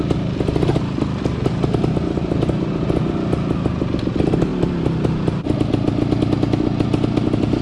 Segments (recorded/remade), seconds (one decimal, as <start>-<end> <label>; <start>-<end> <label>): 0.0-7.6 recorded